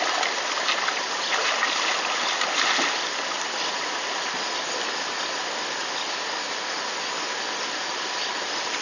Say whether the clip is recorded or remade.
recorded